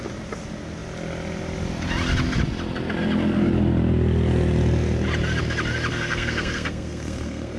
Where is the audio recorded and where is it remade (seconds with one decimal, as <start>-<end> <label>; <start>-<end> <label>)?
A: 0.0-5.9 recorded; 5.9-7.6 remade